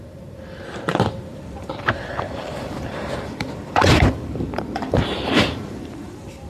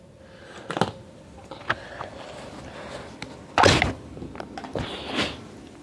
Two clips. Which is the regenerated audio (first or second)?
first